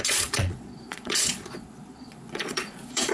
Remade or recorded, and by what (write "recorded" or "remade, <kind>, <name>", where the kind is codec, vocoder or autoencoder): remade, vocoder, Vocos